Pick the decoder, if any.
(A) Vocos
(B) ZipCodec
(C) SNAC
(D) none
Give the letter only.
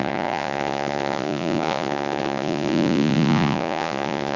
A